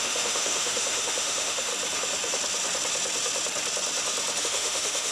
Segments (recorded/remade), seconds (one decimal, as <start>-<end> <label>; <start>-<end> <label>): 0.0-1.7 remade; 1.7-4.4 recorded; 4.4-5.1 remade